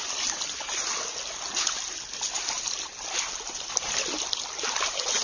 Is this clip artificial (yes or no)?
no